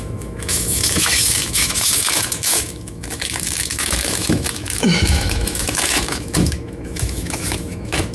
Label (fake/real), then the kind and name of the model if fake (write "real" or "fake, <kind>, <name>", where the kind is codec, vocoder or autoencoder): fake, autoencoder, DAC-VAE